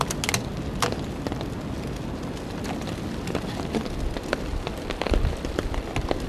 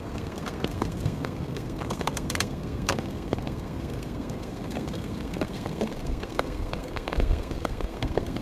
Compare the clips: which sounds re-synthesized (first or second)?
second